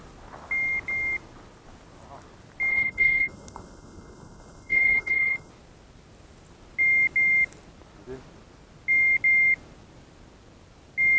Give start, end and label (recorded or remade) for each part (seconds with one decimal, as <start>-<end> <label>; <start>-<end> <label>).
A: 0.0-2.7 recorded; 2.7-5.5 remade; 5.5-11.2 recorded